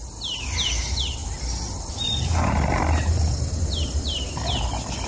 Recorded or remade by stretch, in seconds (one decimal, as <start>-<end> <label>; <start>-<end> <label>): 0.0-5.1 recorded